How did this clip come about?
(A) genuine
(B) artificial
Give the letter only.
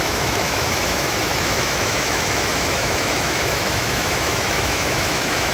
B